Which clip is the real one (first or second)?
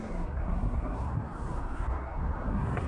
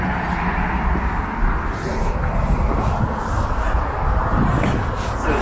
second